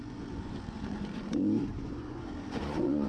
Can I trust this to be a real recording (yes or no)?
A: no